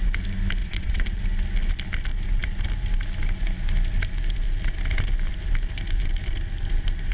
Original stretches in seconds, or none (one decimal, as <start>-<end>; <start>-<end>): 0.0-0.6; 1.2-7.1